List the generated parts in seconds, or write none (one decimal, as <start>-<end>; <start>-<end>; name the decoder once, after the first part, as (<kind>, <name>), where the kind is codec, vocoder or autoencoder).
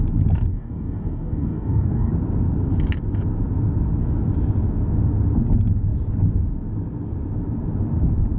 0.5-2.1 (codec, DAC)